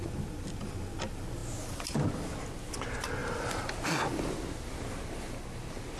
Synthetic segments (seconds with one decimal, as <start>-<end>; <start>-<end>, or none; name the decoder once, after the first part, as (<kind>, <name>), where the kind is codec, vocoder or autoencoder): 3.2-3.8 (vocoder, BigVGAN v2)